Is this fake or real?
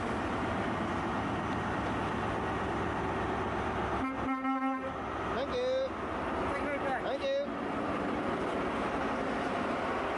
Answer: real